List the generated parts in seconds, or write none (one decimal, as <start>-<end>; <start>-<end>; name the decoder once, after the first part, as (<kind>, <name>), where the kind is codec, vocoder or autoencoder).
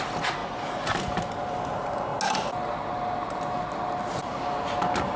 none